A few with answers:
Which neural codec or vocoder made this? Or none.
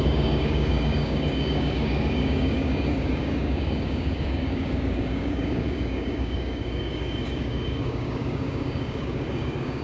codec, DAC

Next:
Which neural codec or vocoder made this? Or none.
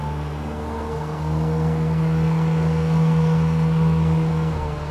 codec, SNAC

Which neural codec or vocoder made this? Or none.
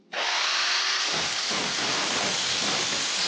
none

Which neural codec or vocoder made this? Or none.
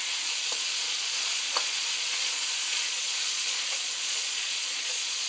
vocoder, Vocos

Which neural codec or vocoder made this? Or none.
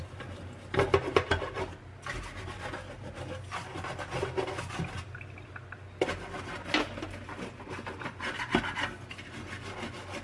none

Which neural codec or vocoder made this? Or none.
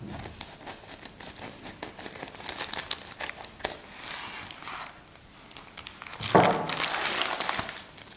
none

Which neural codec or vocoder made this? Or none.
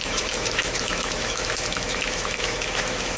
autoencoder, DAC-VAE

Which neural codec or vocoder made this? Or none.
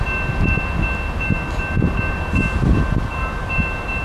none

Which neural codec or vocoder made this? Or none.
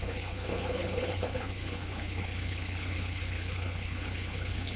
codec, HILCodec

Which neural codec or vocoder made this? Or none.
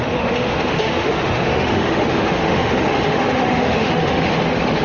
autoencoder, DAC-VAE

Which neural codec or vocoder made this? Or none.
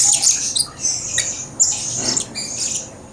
none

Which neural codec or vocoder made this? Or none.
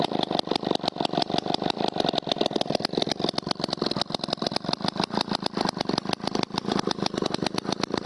none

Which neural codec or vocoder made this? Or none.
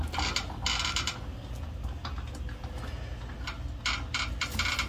none